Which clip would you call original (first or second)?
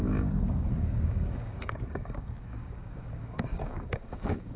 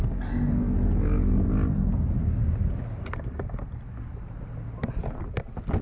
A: second